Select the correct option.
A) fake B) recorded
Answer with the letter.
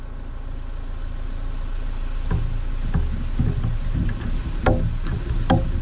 B